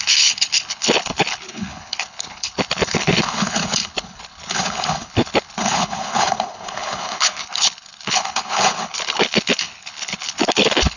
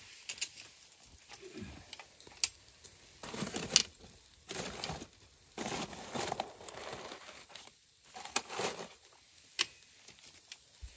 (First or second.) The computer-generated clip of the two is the first